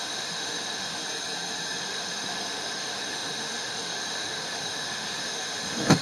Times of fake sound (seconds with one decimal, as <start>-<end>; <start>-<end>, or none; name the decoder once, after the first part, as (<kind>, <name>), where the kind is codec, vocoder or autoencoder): 0.0-1.0 (autoencoder, DAC-VAE); 1.8-6.0